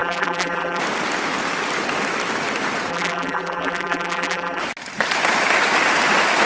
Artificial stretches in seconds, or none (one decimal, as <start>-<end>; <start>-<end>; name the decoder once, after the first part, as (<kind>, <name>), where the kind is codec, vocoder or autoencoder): 0.0-0.8 (vocoder, BigVGAN v2); 2.9-4.6